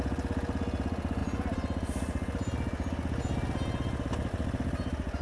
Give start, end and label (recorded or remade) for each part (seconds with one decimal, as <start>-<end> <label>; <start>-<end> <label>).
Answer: 0.0-5.2 recorded